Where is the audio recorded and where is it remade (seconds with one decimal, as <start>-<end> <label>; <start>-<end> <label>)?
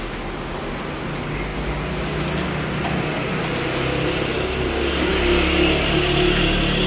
0.0-6.9 recorded